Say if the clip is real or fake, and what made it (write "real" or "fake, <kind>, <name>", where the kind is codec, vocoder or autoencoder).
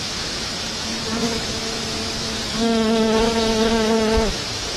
fake, autoencoder, DAC-VAE